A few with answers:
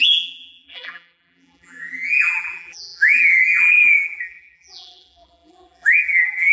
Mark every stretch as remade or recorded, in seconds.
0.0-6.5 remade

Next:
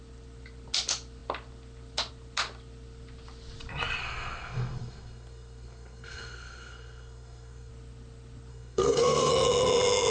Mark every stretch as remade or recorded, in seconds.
0.0-4.0 recorded; 4.0-7.7 remade; 7.7-8.5 recorded; 8.5-9.3 remade; 9.3-10.1 recorded

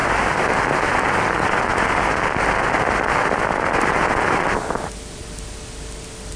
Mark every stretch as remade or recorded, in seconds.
0.0-6.4 recorded

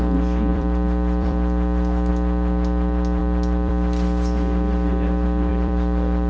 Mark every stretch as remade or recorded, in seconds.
0.0-0.5 recorded; 0.5-2.1 remade; 2.1-3.2 recorded; 3.2-3.7 remade; 3.7-5.5 recorded; 5.5-6.3 remade

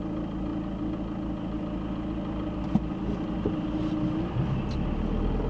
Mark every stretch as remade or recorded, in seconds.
0.0-5.5 recorded

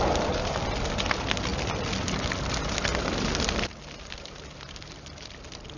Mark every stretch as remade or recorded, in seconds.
0.0-5.8 recorded

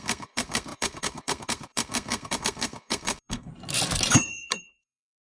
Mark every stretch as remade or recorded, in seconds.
0.0-3.5 remade; 3.5-4.1 recorded; 4.1-5.2 remade

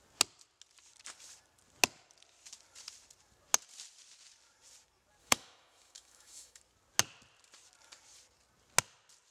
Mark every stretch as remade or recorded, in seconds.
0.0-5.2 recorded; 5.2-6.6 remade; 6.6-9.3 recorded